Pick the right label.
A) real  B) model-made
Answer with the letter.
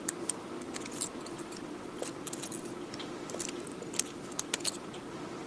A